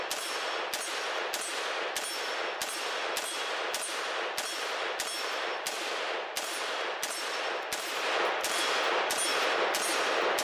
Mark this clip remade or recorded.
recorded